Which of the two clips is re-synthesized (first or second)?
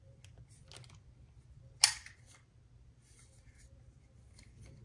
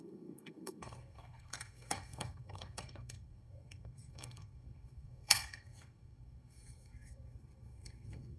second